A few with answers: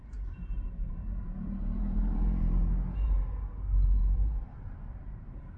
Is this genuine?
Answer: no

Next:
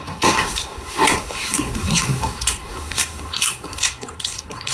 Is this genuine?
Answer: no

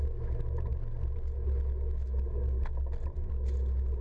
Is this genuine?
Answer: yes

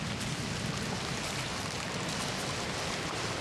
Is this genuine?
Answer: yes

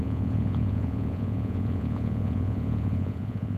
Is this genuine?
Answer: no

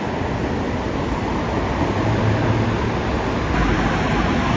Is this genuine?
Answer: yes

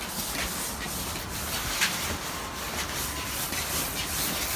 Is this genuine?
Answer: yes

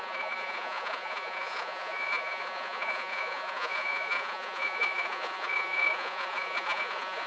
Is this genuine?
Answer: no